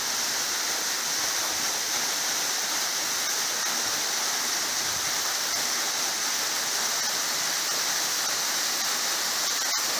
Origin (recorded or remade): recorded